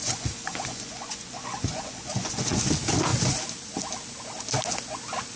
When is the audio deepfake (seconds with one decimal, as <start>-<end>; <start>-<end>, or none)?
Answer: 0.0-2.7